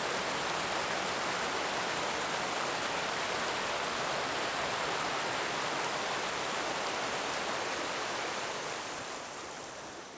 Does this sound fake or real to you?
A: real